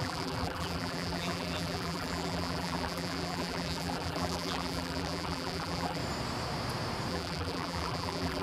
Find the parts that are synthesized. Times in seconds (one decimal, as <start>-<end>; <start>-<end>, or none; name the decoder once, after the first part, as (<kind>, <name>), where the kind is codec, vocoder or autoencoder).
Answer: 0.0-6.0 (vocoder, BigVGAN v2); 7.1-8.4